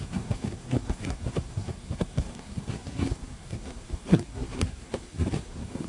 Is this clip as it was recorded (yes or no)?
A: no